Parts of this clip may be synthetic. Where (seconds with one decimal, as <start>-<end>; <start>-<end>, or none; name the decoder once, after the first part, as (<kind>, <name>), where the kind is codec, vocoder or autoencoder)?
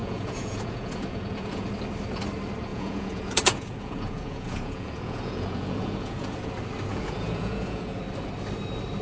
0.0-1.7 (vocoder, Vocos); 2.7-6.5; 6.9-8.0